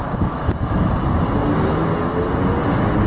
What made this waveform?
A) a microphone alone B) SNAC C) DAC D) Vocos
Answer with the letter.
A